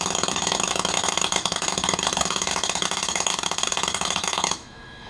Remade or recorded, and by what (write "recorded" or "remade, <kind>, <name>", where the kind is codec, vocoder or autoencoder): remade, autoencoder, DAC-VAE